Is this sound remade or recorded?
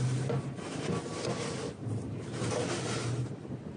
recorded